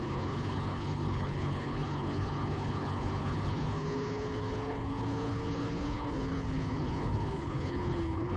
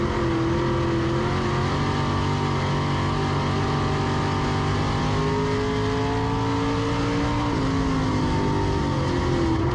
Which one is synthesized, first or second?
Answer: first